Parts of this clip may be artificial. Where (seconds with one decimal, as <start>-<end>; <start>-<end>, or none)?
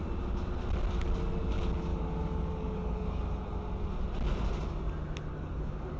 1.9-3.2; 5.3-6.0